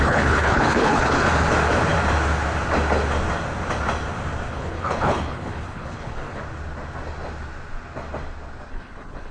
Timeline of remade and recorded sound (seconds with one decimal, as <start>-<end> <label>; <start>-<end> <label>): 0.0-1.3 remade; 1.3-4.5 recorded; 4.5-6.4 remade; 6.4-8.7 recorded; 8.7-9.3 remade